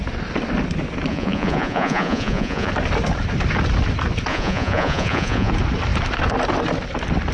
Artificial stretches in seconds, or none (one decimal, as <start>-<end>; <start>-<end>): 1.1-2.7; 4.3-5.5